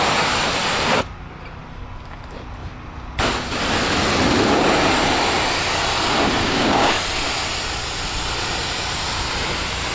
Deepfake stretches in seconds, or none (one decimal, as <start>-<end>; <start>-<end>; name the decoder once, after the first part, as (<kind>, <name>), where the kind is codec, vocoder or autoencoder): 6.4-6.9 (codec, DAC)